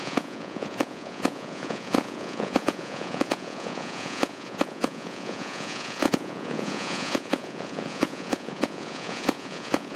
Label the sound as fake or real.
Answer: fake